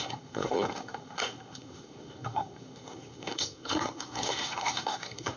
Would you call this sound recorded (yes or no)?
no